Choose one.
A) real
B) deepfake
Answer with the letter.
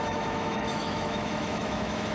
B